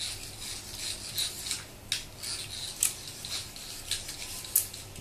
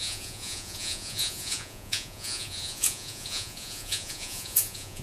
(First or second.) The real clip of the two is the first